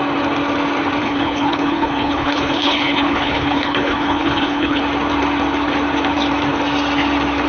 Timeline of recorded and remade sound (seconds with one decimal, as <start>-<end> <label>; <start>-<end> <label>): 0.0-1.0 recorded; 1.0-4.8 remade; 4.8-7.5 recorded